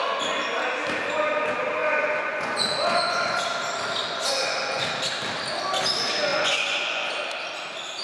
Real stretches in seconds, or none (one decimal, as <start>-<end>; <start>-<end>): 0.0-1.8; 3.4-4.0; 4.9-6.3; 7.1-8.0